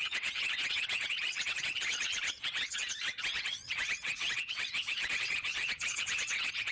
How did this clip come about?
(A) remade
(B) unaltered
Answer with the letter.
A